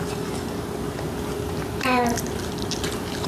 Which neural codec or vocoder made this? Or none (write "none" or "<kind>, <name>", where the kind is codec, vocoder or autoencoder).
none